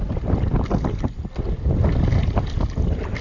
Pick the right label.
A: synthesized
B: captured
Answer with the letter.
B